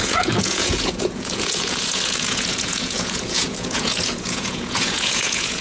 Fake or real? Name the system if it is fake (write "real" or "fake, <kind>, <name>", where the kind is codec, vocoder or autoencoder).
fake, vocoder, Vocos